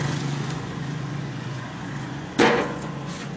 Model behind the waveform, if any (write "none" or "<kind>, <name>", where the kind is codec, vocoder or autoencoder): vocoder, Vocos